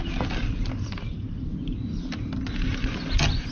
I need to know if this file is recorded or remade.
recorded